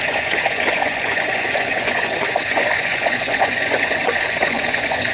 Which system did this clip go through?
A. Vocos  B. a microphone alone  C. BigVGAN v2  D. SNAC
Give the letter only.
A